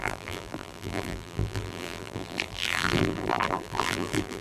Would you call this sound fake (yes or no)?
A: yes